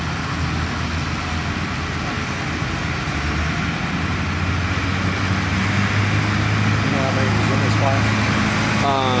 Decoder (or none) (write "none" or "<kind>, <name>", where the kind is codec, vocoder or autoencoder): none